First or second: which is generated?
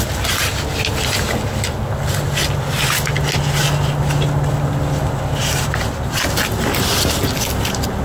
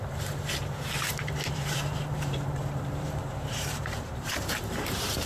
second